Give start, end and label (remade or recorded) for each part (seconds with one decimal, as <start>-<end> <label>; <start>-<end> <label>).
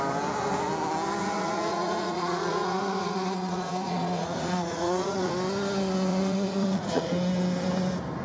0.0-1.2 recorded; 1.2-5.3 remade; 5.3-6.1 recorded; 6.1-7.1 remade; 7.1-8.2 recorded